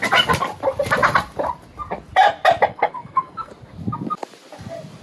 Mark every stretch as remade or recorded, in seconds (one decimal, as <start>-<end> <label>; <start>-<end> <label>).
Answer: 0.0-2.7 recorded; 2.7-3.5 remade; 3.5-5.0 recorded